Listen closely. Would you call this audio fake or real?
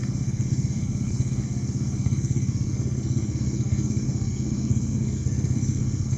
fake